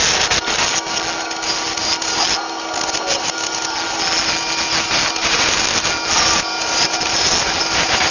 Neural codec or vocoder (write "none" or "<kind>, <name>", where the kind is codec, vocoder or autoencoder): none